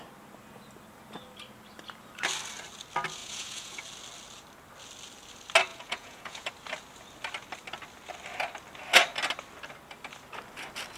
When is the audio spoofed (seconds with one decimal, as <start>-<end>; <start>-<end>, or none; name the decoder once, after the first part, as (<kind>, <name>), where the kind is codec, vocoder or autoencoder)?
3.2-3.8 (vocoder, Vocos); 5.7-6.5